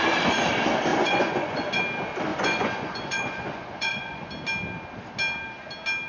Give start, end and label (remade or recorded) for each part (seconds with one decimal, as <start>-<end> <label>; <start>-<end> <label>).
0.0-0.9 recorded; 0.9-1.8 remade; 1.8-2.3 recorded; 2.3-4.3 remade; 4.3-6.1 recorded